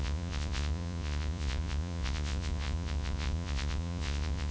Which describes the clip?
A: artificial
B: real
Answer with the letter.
A